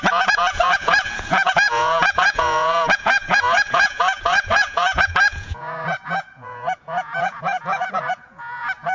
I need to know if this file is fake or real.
fake